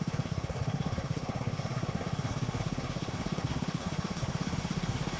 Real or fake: fake